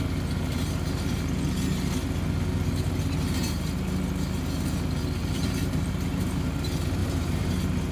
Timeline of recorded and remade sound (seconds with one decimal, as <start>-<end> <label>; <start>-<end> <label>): 0.0-5.2 recorded; 5.2-6.4 remade; 6.4-7.0 recorded; 7.0-7.5 remade; 7.5-7.9 recorded